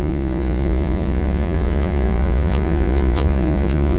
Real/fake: fake